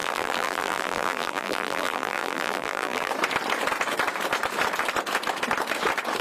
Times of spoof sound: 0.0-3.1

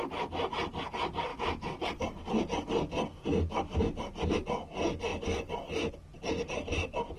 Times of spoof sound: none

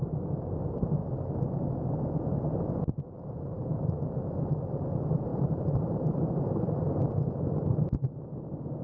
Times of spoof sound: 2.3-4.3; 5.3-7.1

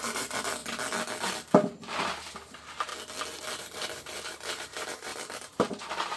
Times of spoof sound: 0.0-0.6; 2.0-2.9; 3.6-6.2

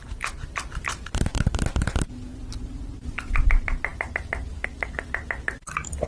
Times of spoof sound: none

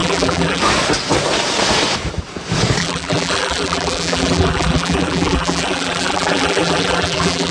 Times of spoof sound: 0.0-0.6; 2.8-7.5